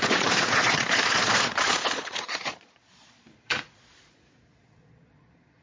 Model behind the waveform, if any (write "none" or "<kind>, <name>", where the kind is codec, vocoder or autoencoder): vocoder, Vocos